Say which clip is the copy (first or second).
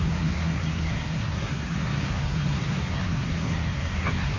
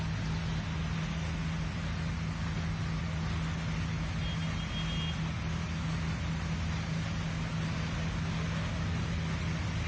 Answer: first